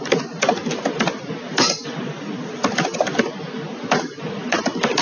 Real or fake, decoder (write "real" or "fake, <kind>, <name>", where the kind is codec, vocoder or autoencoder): real